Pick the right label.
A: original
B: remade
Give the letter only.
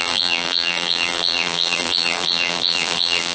B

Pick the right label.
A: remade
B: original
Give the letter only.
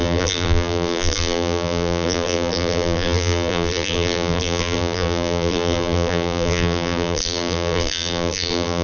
A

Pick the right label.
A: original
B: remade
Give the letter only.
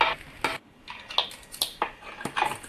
A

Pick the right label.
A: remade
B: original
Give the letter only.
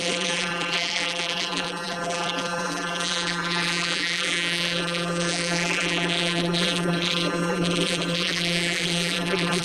A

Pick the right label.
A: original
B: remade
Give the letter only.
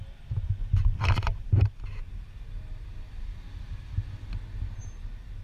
A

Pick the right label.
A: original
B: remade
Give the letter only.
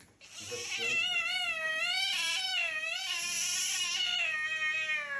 A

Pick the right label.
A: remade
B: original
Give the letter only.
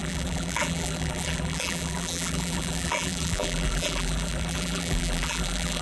A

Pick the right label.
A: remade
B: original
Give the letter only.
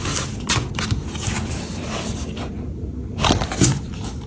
B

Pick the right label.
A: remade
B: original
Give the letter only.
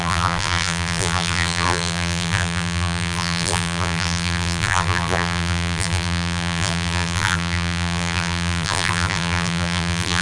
A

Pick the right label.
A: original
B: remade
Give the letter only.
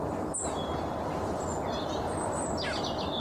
A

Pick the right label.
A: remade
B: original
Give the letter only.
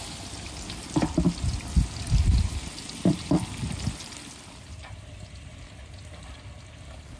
B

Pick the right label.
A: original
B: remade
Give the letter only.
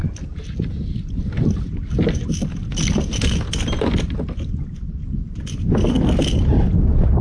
A